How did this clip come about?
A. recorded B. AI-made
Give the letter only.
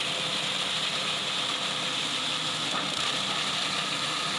A